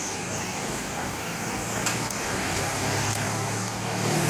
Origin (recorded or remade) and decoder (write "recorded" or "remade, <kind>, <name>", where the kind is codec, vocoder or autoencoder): remade, codec, DAC